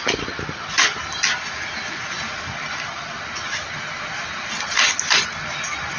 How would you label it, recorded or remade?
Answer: recorded